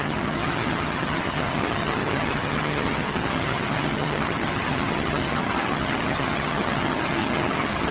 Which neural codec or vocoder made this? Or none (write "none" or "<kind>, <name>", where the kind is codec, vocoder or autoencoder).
vocoder, HiFi-GAN